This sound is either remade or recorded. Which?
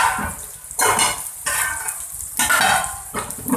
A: recorded